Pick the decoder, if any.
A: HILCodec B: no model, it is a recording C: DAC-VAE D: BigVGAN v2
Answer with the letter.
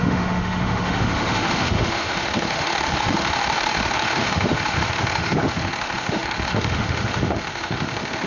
C